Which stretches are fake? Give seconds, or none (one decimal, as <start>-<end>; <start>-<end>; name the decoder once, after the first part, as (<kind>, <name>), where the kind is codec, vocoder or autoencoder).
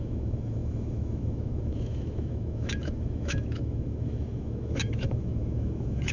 0.0-6.1 (autoencoder, DAC-VAE)